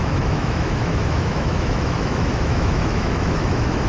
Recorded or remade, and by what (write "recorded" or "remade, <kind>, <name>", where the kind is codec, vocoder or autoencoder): remade, autoencoder, DAC-VAE